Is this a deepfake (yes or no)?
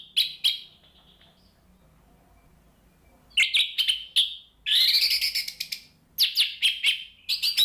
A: no